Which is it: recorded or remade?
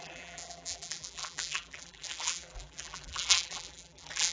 remade